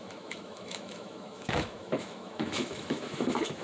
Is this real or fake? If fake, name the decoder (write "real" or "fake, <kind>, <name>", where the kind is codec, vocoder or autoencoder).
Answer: fake, autoencoder, DAC-VAE